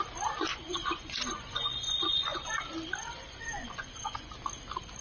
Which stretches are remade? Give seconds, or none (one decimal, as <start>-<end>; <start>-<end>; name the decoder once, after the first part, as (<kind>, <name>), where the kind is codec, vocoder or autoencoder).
0.5-2.6 (vocoder, Vocos); 3.0-4.3